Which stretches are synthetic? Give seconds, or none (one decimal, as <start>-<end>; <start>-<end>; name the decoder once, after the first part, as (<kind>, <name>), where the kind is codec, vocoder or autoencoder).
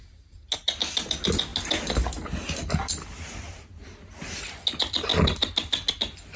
none